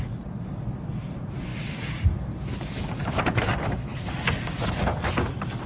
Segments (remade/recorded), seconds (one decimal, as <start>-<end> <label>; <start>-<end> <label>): 0.0-5.7 recorded